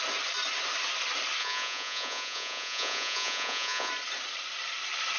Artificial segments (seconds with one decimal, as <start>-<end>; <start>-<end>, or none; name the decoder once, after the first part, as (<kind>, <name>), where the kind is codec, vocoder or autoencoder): 1.4-3.9 (vocoder, Vocos)